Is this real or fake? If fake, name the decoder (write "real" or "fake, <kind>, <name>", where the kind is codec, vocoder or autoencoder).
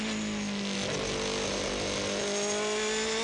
real